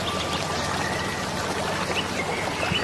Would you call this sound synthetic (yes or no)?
no